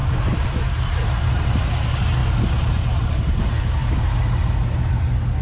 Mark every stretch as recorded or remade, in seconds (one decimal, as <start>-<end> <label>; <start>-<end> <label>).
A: 0.0-5.4 recorded